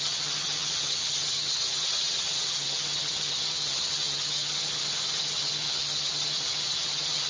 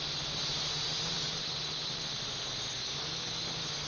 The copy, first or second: first